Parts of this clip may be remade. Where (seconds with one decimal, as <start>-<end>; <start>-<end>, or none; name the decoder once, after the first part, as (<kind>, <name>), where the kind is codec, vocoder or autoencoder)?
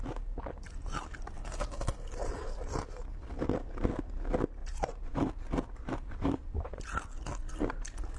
4.6-6.8 (vocoder, BigVGAN v2)